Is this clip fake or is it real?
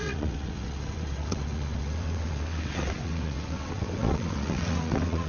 fake